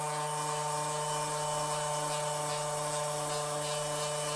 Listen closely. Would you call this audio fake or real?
real